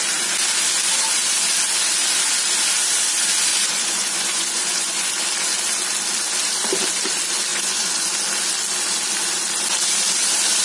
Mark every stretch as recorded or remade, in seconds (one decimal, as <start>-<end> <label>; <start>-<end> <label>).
0.0-3.5 recorded; 3.5-5.1 remade; 5.1-7.5 recorded; 7.5-8.1 remade; 8.1-10.6 recorded